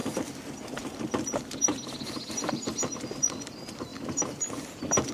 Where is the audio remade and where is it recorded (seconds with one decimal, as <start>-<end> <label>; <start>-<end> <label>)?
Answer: 0.0-5.1 recorded